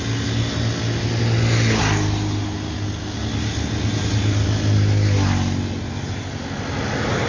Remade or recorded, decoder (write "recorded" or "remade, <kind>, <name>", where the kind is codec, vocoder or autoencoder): recorded